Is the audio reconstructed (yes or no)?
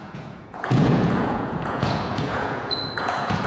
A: yes